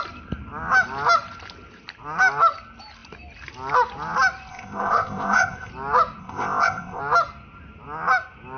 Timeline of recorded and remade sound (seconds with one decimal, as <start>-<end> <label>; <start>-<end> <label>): 0.0-4.5 recorded; 4.5-5.7 remade; 5.7-6.2 recorded; 6.2-7.0 remade; 7.0-8.6 recorded